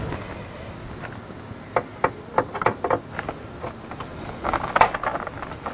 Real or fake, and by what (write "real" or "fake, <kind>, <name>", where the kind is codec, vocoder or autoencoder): real